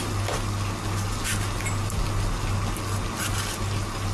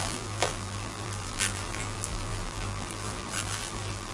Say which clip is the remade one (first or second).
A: second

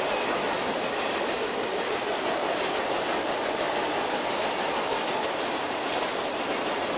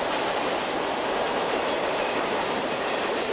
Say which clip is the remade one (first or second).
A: second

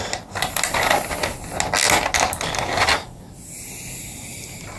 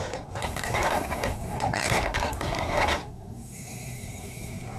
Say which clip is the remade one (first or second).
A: second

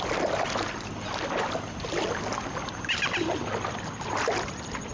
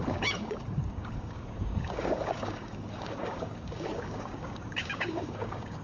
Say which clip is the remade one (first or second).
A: second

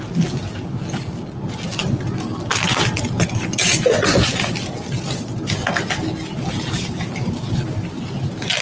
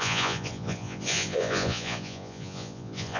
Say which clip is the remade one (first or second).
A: second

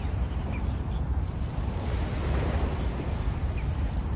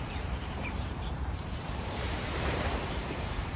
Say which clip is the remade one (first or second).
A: second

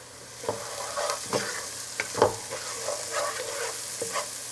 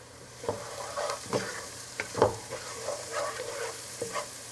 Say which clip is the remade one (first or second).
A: second